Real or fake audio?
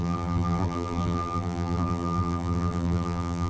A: fake